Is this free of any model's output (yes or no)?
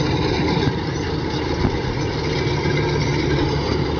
yes